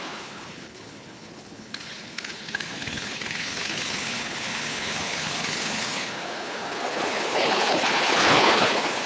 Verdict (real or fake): fake